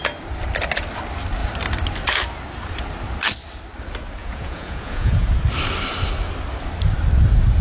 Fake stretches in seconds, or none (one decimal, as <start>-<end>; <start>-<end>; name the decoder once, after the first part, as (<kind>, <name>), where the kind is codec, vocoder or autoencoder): 4.2-5.4 (vocoder, Vocos)